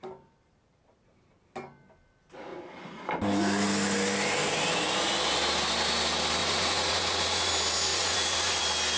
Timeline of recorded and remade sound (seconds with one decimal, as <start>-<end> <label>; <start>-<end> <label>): 0.0-6.4 recorded; 6.4-7.5 remade; 7.5-7.9 recorded; 7.9-8.6 remade; 8.6-9.0 recorded